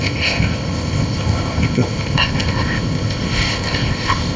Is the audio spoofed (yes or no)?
yes